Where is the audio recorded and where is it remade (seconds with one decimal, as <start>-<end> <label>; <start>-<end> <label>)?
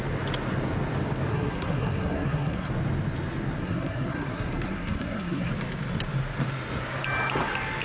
0.0-1.3 recorded; 1.3-2.7 remade; 2.7-3.6 recorded; 3.6-5.5 remade; 5.5-7.8 recorded